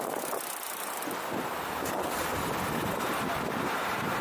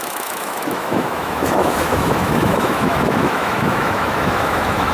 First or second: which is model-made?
second